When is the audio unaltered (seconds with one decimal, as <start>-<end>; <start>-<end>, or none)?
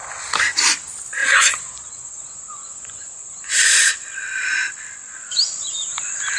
0.0-1.2; 3.5-6.4